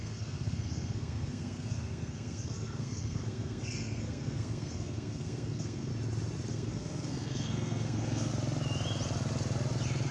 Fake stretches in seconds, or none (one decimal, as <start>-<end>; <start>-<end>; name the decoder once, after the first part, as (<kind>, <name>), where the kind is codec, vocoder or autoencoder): 0.0-5.9 (codec, SNAC); 6.5-8.3